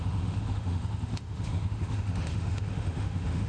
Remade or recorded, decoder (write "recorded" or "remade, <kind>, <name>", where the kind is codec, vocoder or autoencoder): remade, autoencoder, DAC-VAE